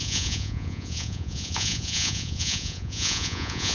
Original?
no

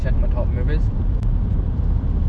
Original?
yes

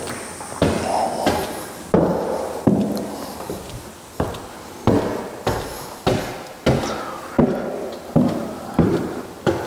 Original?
yes